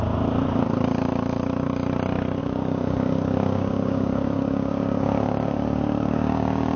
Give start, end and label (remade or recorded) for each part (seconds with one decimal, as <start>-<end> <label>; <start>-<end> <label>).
0.0-2.4 recorded; 2.4-6.8 remade